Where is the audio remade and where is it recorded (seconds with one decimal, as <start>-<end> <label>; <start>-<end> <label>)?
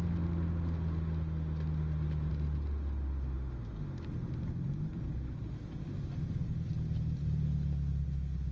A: 0.0-8.5 recorded